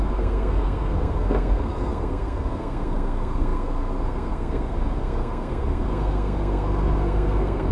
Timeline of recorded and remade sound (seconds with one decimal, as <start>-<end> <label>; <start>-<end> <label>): 0.0-7.7 remade